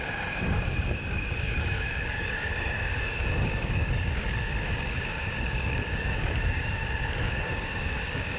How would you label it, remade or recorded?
remade